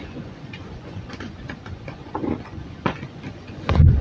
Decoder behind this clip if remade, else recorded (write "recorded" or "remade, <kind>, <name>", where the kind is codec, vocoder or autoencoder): remade, vocoder, Vocos